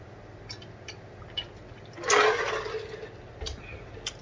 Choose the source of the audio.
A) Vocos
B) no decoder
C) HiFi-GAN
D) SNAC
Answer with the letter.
B